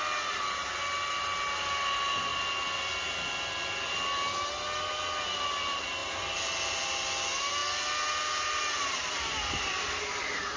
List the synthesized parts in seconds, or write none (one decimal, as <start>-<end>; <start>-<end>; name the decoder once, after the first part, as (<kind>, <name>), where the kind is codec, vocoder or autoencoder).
none